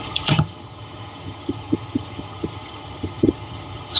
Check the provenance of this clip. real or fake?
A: fake